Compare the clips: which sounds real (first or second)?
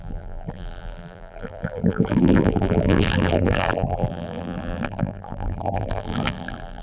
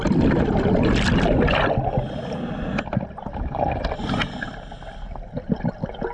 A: second